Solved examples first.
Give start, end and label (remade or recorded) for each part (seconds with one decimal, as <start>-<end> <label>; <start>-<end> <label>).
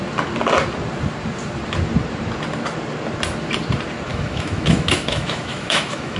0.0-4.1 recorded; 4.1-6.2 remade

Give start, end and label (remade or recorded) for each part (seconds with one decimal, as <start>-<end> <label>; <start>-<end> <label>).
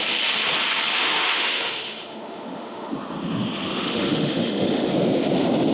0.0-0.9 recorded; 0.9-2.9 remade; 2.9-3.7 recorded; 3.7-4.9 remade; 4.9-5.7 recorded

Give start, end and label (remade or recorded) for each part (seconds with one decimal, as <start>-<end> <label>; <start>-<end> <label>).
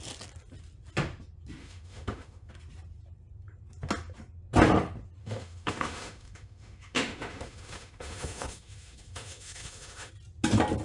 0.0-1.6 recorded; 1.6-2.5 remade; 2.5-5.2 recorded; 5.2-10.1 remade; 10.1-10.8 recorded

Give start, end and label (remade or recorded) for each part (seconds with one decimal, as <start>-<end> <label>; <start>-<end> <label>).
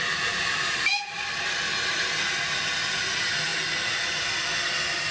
0.0-5.1 recorded